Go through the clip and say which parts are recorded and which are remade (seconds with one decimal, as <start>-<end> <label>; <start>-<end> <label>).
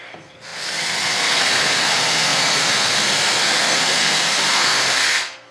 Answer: 0.0-5.5 remade